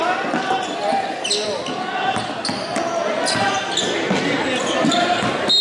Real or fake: real